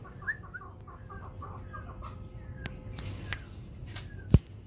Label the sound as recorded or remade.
recorded